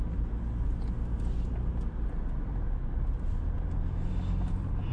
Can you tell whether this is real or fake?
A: real